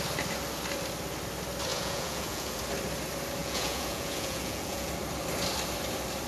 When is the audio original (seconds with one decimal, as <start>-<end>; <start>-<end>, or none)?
0.0-1.7; 2.6-3.4; 4.9-6.3